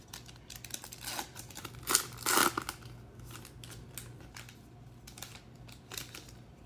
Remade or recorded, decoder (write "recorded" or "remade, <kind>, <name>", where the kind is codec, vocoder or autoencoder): recorded